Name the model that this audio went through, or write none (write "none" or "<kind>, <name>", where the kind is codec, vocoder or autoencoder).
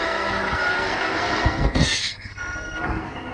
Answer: codec, SNAC